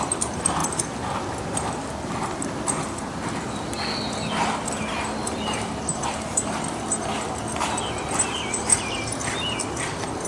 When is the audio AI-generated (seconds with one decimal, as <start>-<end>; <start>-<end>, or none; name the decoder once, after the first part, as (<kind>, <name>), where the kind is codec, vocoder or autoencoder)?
5.2-6.8 (vocoder, BigVGAN v2)